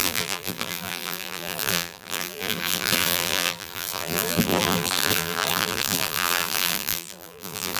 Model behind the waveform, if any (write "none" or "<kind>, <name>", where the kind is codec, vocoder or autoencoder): vocoder, BigVGAN v2